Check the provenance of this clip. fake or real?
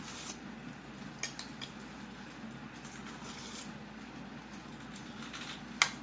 real